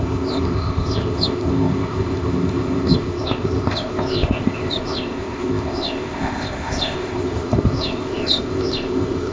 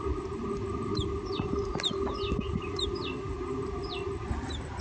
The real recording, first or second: second